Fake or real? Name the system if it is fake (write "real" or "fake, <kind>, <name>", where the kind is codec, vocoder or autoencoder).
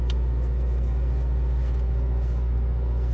fake, codec, SNAC